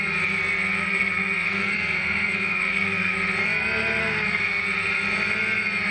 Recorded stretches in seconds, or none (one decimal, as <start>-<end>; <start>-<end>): 0.0-0.8; 3.1-4.0; 4.6-5.9

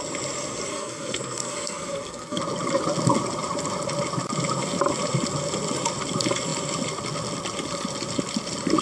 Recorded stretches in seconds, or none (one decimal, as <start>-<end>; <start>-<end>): 0.0-0.7; 2.4-8.8

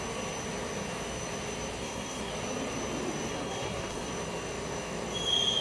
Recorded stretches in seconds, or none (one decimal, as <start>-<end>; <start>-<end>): 0.0-1.8; 2.3-3.3; 4.1-5.6

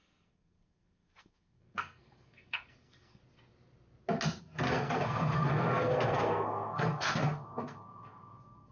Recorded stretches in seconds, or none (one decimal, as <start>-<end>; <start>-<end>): 3.2-4.4